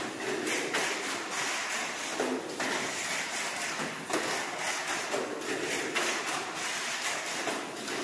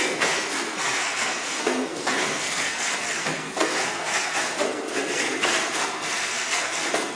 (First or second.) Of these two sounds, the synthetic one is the second